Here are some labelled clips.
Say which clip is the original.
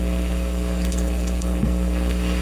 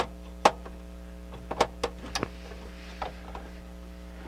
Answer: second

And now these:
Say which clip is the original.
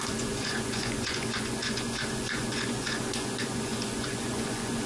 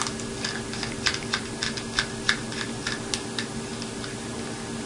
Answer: second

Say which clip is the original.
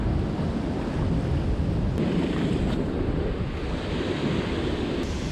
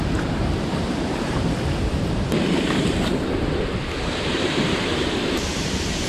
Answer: first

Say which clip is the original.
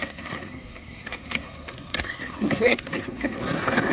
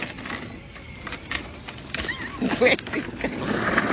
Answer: second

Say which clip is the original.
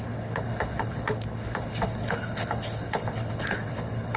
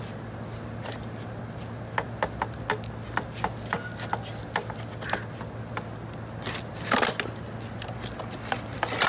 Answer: second